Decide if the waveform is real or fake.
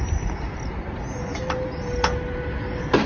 real